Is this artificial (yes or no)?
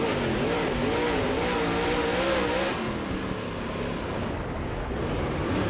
no